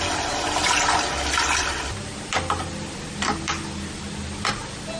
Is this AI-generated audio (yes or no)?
no